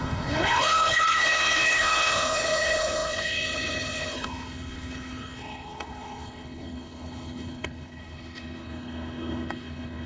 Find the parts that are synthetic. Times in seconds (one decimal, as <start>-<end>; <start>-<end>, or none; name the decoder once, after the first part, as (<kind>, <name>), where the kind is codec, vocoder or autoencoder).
0.0-10.1 (codec, HILCodec)